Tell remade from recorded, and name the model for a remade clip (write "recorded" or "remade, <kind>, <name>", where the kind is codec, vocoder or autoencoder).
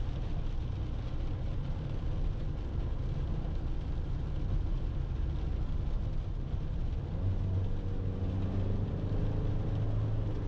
recorded